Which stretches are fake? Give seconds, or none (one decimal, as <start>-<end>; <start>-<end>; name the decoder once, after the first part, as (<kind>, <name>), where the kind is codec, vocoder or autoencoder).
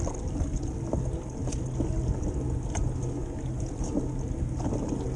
none